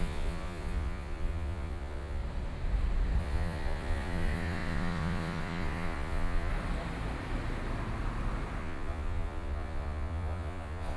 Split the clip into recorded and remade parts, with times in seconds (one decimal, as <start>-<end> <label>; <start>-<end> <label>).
0.0-2.2 remade; 2.2-3.2 recorded; 3.2-6.5 remade; 6.5-8.6 recorded; 8.6-11.0 remade